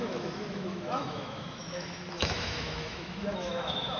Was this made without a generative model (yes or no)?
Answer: no